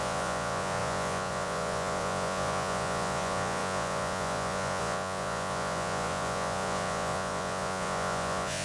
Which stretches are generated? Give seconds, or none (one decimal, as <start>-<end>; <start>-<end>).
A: 0.0-8.6